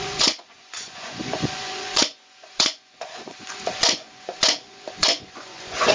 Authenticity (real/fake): fake